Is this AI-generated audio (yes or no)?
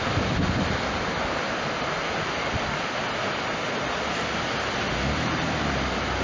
no